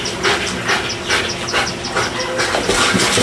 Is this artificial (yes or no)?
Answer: no